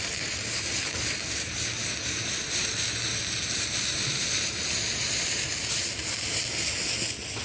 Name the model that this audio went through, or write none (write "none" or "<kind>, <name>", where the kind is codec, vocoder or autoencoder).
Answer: none